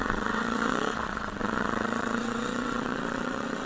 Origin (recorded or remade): remade